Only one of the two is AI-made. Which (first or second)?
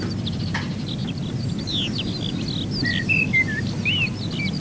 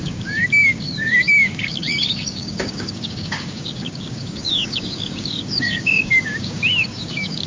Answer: second